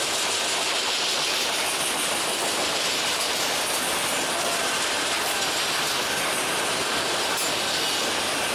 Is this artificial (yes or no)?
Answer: no